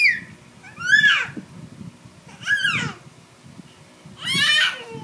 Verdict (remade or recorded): recorded